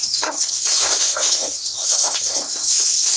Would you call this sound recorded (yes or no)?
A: no